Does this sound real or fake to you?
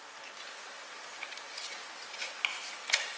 real